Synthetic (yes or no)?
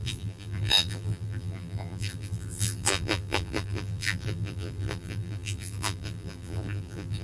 yes